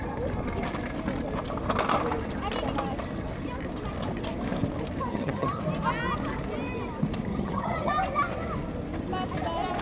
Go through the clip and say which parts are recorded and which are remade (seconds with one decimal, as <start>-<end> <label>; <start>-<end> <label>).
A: 0.0-5.1 recorded; 5.1-5.6 remade; 5.6-7.3 recorded; 7.3-7.9 remade; 7.9-9.8 recorded